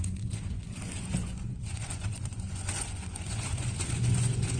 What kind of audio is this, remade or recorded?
remade